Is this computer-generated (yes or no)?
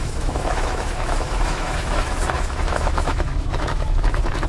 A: yes